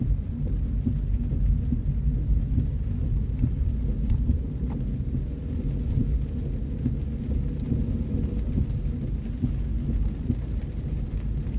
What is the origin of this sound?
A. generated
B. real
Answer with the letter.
B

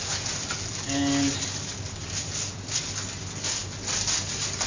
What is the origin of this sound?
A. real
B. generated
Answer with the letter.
A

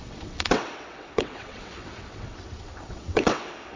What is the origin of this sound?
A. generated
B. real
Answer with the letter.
A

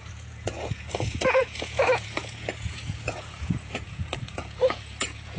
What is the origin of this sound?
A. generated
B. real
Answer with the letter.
A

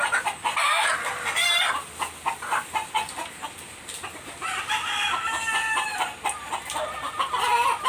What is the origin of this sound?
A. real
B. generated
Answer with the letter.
B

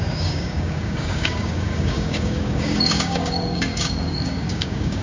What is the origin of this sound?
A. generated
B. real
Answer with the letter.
A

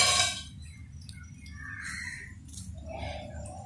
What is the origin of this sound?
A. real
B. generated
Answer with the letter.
A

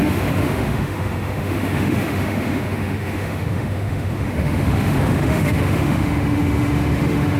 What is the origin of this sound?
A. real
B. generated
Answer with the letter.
B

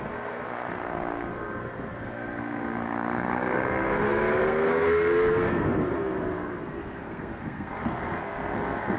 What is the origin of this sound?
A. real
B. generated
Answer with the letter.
B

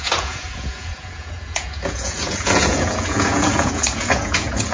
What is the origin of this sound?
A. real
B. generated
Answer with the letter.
B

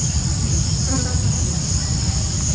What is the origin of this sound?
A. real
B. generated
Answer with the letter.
A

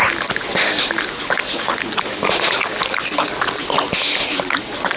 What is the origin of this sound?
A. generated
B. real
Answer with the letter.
B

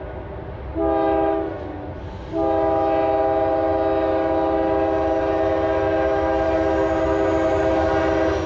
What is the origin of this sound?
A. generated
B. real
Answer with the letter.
B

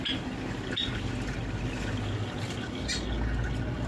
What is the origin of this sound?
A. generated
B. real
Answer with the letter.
B